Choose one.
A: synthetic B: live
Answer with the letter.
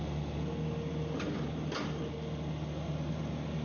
B